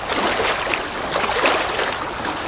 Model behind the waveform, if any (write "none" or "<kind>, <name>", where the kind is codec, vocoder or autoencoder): none